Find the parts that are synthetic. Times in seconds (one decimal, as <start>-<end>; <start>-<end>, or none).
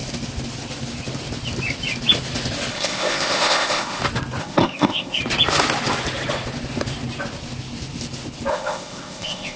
2.7-4.0; 4.4-5.2; 8.5-9.6